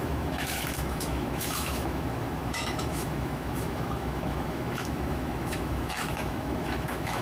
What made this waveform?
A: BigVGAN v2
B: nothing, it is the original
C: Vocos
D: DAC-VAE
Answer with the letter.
D